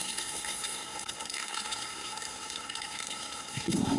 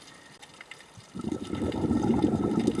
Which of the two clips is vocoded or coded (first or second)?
first